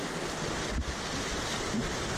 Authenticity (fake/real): real